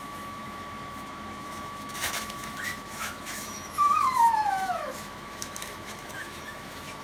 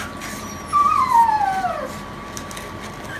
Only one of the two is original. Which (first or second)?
second